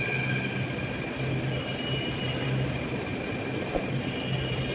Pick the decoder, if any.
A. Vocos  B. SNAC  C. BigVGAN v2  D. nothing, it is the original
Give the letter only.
D